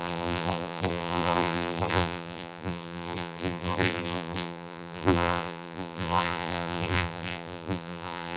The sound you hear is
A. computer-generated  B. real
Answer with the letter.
A